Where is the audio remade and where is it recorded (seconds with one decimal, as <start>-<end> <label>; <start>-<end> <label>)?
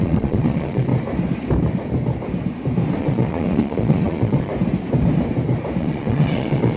0.0-0.9 remade; 0.9-3.0 recorded; 3.0-4.5 remade; 4.5-5.8 recorded; 5.8-6.8 remade